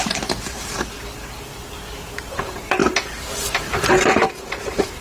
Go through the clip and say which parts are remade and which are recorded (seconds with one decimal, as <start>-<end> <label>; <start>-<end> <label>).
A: 0.0-1.5 remade; 1.5-2.3 recorded; 2.3-5.0 remade